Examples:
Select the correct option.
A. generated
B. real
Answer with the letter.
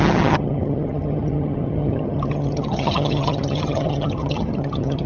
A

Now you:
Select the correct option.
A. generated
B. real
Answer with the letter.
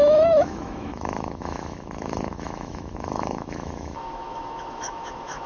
A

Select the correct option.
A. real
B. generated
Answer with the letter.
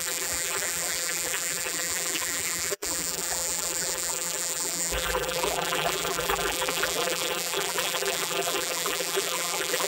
B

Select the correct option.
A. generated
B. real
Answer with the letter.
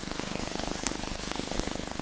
A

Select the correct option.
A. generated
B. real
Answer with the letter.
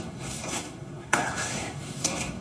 A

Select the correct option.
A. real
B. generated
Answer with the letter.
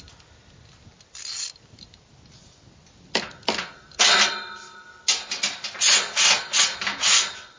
A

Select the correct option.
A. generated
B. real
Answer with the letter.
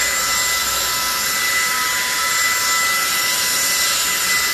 B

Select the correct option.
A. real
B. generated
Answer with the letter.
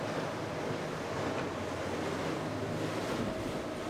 A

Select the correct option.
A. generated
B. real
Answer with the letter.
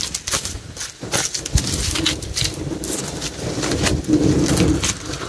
B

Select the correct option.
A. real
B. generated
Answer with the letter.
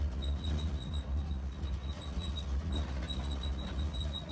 B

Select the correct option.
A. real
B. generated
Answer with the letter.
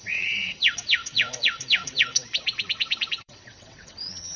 B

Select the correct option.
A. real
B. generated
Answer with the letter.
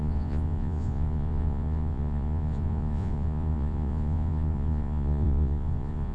B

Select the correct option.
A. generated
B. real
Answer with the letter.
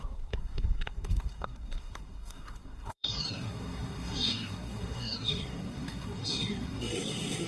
A